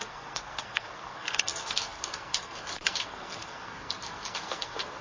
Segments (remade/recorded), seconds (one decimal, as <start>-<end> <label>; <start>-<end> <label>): 0.0-5.0 remade